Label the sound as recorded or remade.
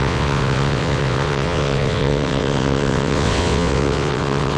remade